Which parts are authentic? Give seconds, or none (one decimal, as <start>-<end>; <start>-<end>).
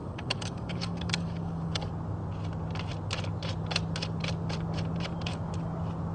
1.9-6.1